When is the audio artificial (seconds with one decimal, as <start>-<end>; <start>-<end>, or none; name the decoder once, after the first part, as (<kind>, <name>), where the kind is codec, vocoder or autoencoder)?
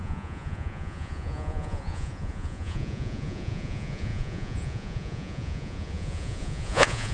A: 0.0-7.1 (vocoder, Vocos)